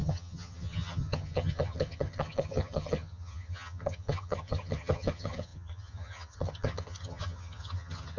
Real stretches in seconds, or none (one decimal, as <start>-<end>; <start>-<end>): none